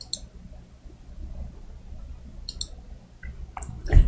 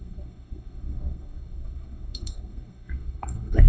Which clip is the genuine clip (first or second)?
first